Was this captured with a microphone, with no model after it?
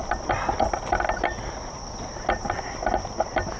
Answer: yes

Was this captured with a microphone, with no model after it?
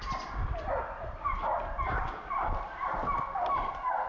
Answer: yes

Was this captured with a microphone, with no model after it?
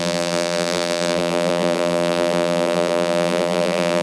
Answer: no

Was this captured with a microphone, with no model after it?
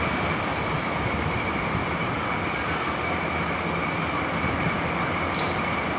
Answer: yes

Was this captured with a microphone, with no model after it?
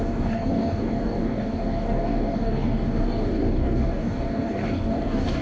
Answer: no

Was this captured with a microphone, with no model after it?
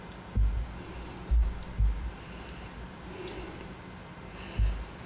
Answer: yes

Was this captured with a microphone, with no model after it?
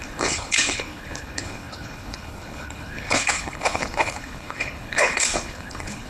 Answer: no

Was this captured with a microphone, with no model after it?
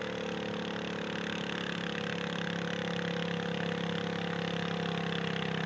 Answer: yes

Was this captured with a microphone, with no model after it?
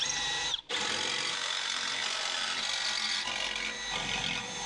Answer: yes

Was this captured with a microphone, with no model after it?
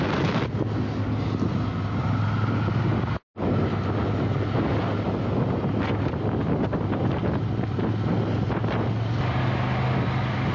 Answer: yes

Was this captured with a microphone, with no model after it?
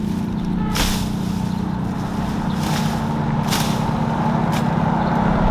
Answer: yes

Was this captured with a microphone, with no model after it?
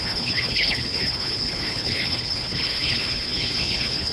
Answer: no